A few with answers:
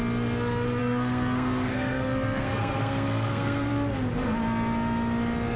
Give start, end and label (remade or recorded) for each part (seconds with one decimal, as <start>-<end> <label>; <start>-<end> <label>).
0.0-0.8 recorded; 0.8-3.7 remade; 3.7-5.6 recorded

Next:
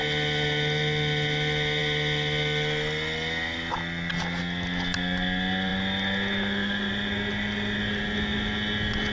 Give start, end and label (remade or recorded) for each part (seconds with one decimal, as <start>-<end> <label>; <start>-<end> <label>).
0.0-9.1 recorded

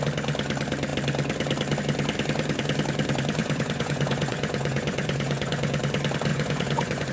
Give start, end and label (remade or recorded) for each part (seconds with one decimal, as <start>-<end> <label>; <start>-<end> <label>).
0.0-3.4 recorded; 3.4-5.8 remade; 5.8-6.3 recorded; 6.3-7.1 remade

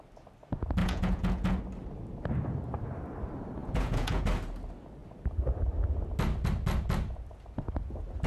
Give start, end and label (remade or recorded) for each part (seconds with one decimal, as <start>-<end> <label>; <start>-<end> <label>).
0.0-0.8 recorded; 0.8-1.6 remade; 1.6-3.6 recorded; 3.6-4.2 remade; 4.2-8.3 recorded